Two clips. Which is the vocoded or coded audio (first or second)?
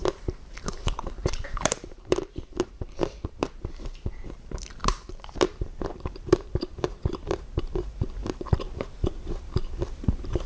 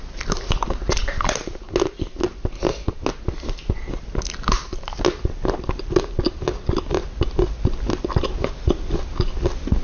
first